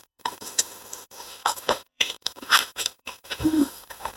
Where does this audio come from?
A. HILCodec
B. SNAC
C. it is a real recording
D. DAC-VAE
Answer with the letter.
D